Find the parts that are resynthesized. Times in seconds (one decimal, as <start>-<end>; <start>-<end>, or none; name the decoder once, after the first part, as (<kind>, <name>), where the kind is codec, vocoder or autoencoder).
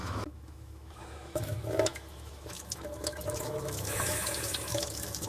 0.0-5.3 (autoencoder, DAC-VAE)